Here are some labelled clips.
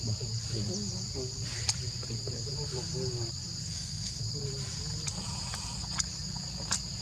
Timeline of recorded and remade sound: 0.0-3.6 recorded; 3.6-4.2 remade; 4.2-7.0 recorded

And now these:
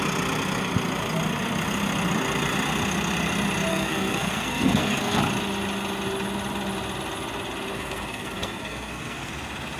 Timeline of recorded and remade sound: 0.0-3.7 recorded; 3.7-5.2 remade; 5.2-7.7 recorded; 7.7-9.3 remade; 9.3-9.8 recorded

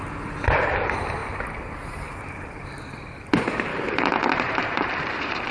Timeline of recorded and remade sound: 0.0-1.2 recorded; 1.2-2.0 remade; 2.0-3.7 recorded; 3.7-5.5 remade

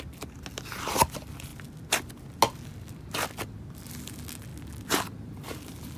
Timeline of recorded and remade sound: 0.0-6.0 recorded

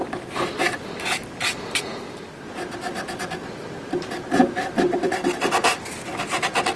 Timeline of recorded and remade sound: 0.0-2.0 remade; 2.0-6.8 recorded